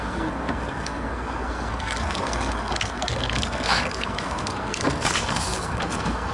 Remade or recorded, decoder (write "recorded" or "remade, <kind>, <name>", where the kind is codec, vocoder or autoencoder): remade, codec, SNAC